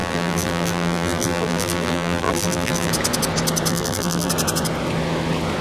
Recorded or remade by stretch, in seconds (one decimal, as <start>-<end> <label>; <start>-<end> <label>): 0.0-2.9 remade; 2.9-3.7 recorded; 3.7-4.3 remade; 4.3-5.6 recorded